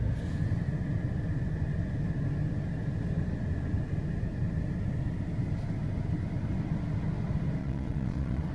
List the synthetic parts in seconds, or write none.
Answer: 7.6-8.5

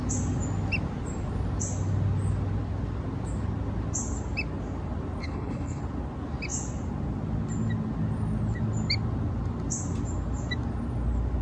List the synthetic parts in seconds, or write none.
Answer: 5.2-5.8

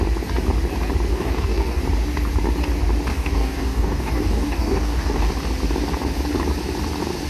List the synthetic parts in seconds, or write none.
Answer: 1.1-1.8; 3.1-5.3